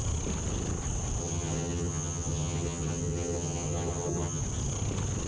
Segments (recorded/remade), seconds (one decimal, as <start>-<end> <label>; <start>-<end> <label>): 0.0-1.2 recorded; 1.2-4.4 remade; 4.4-5.3 recorded

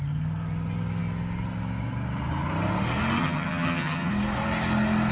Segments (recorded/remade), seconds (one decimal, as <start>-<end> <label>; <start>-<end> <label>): 0.0-3.2 recorded; 3.2-4.1 remade; 4.1-5.1 recorded

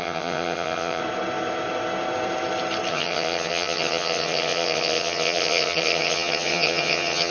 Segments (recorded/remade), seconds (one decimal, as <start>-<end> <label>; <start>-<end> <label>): 0.0-1.0 remade; 1.0-2.9 recorded; 2.9-7.3 remade

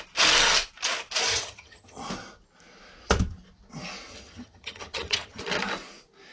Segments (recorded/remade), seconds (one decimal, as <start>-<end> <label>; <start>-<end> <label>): 0.0-1.3 recorded; 1.3-2.0 remade; 2.0-4.1 recorded; 4.1-5.4 remade; 5.4-6.3 recorded

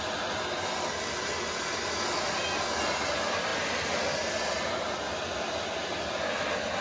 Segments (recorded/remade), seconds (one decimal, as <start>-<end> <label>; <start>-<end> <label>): 0.0-6.8 recorded